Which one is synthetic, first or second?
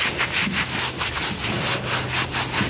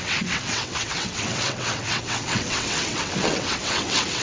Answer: second